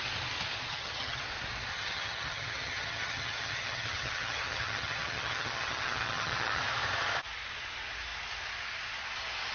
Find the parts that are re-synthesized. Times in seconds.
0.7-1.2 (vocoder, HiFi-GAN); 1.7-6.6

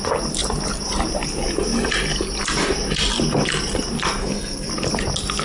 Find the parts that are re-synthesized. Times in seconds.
4.2-4.7 (codec, SNAC)

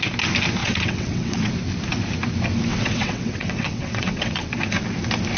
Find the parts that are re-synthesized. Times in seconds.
0.6-1.5 (vocoder, WaveNeXt); 2.7-4.5

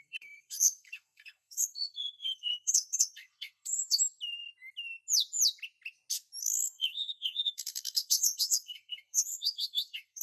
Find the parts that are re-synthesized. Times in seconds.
0.0-4.0 (codec, SNAC); 6.4-10.2